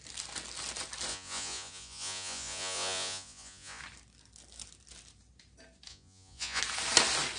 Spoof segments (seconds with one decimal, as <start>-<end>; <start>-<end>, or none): 1.1-3.8; 5.9-6.6